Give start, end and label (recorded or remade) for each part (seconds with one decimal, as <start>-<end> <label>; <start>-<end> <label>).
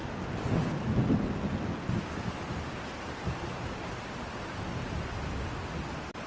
0.0-6.3 recorded